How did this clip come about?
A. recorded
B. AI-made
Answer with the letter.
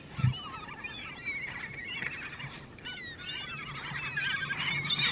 A